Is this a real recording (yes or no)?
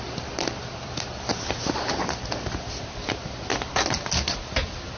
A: yes